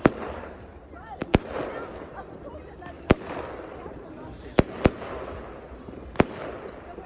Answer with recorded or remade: remade